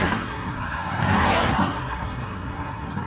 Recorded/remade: remade